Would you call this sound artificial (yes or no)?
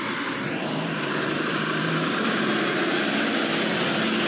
yes